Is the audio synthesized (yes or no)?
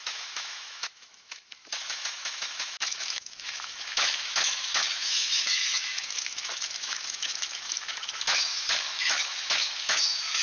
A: yes